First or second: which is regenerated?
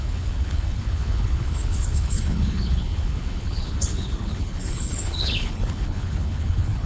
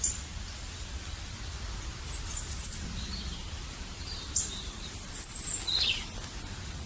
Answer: first